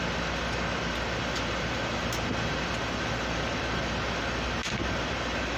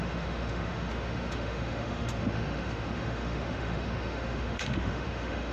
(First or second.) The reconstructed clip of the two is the second